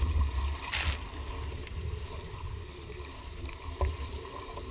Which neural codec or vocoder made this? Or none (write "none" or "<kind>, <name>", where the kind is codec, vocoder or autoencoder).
vocoder, BigVGAN v2